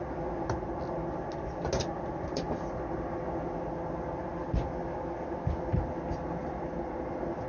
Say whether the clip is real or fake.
real